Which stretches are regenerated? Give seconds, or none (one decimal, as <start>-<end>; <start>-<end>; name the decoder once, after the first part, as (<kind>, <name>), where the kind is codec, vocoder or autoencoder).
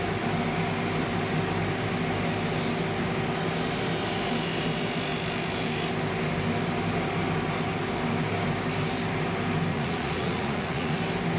9.7-11.0 (vocoder, Vocos)